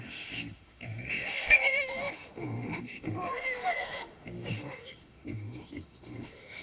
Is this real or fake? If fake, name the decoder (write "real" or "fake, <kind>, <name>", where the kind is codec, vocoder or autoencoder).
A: fake, autoencoder, DAC-VAE